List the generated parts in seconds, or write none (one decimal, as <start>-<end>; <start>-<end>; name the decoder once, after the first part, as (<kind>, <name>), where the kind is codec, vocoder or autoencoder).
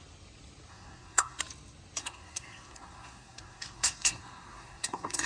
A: 0.7-1.4 (codec, SNAC); 2.0-5.3